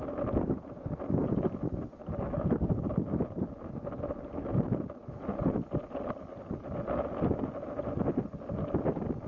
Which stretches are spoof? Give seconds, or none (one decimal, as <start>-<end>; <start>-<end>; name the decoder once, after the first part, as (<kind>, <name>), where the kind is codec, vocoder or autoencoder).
2.0-2.9 (codec, DAC)